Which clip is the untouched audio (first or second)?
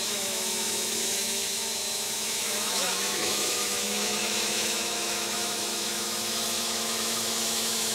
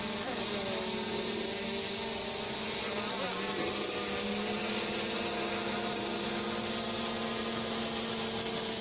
second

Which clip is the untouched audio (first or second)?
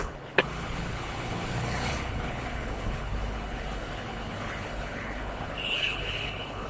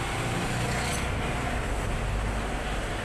second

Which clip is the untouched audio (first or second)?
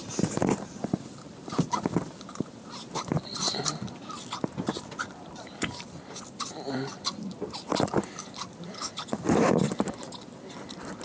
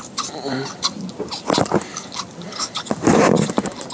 second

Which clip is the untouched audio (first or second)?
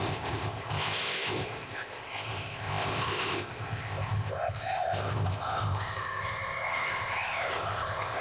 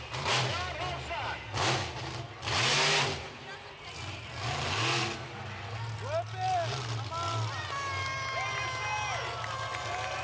second